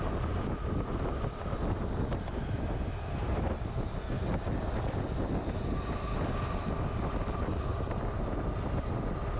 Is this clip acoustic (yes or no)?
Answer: yes